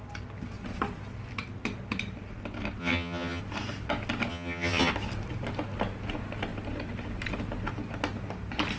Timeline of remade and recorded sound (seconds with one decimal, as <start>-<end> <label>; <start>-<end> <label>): 0.0-2.8 recorded; 2.8-3.4 remade; 3.4-4.3 recorded; 4.3-4.9 remade; 4.9-8.8 recorded